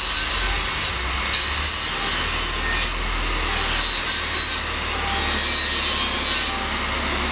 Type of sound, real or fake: real